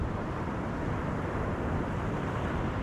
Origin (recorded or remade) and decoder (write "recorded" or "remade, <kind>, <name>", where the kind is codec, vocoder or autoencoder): remade, vocoder, BigVGAN v2